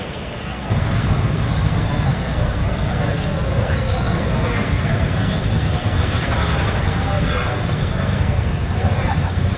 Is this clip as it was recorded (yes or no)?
no